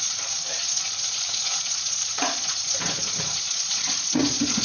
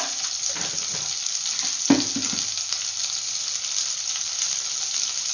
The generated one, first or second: first